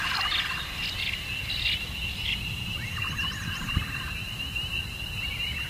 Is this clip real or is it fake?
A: fake